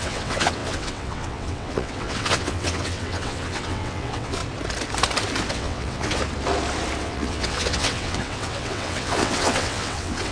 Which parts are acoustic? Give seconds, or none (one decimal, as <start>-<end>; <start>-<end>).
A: 4.4-5.5; 6.2-7.0